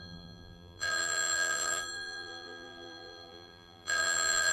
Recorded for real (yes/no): no